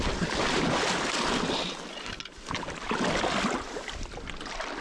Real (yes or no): yes